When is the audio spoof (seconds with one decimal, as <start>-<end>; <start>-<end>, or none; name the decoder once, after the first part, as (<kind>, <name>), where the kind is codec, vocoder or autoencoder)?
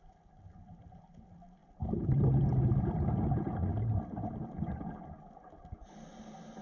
none